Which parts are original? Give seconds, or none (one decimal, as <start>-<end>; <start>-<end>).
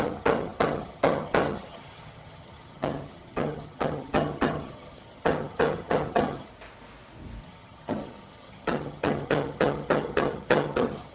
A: 6.5-7.4